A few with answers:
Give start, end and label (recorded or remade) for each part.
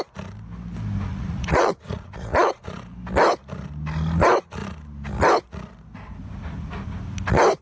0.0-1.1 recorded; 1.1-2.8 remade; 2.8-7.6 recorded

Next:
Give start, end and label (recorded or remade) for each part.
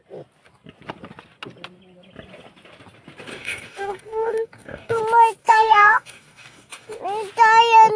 0.0-3.3 recorded; 3.3-5.0 remade; 5.0-5.4 recorded; 5.4-7.0 remade; 7.0-8.0 recorded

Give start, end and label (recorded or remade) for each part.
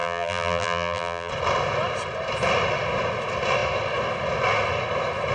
0.0-1.3 remade; 1.3-5.3 recorded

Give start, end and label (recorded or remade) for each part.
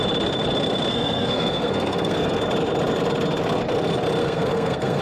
0.0-0.9 recorded; 0.9-2.4 remade; 2.4-4.2 recorded; 4.2-5.0 remade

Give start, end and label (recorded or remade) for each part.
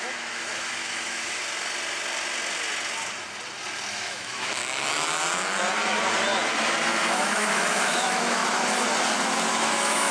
0.0-1.4 remade; 1.4-3.9 recorded; 3.9-4.6 remade; 4.6-7.1 recorded; 7.1-8.4 remade; 8.4-9.5 recorded; 9.5-10.1 remade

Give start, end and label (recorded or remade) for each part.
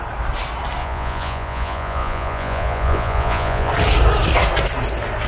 0.0-0.8 recorded; 0.8-3.7 remade; 3.7-5.3 recorded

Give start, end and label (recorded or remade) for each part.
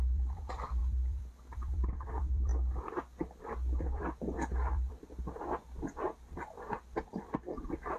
0.0-2.5 remade; 2.5-3.8 recorded; 3.8-8.0 remade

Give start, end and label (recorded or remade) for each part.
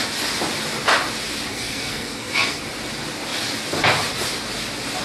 0.0-1.5 recorded; 1.5-2.6 remade; 2.6-5.0 recorded